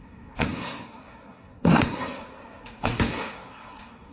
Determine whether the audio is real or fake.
fake